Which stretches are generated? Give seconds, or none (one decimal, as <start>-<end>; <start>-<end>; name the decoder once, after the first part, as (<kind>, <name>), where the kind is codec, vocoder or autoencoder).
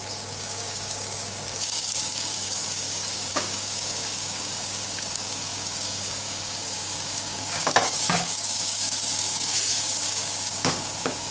0.0-11.3 (codec, DAC)